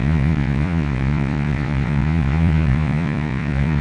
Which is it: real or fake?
fake